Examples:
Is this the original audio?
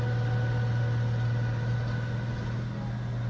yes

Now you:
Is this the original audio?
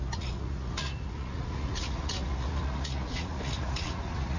no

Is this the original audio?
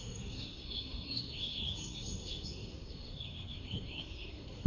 no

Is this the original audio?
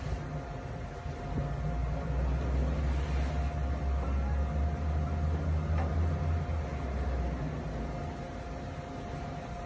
yes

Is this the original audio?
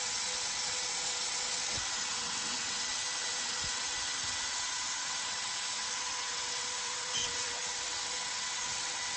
no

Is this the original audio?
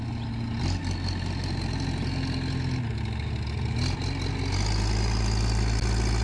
yes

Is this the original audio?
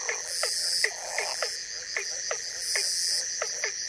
no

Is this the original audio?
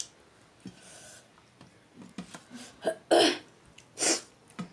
yes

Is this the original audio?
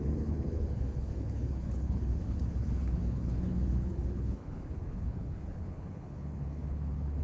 no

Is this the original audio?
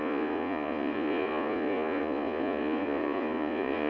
no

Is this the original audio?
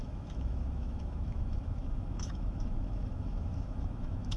no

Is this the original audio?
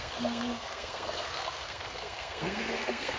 no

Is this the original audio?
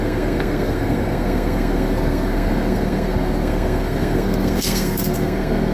no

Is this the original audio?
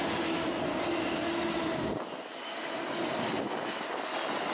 yes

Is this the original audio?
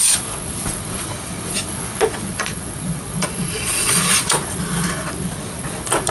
no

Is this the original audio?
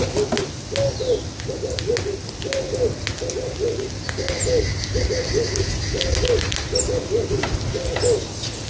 yes